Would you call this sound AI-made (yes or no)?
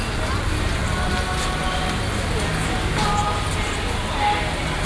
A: no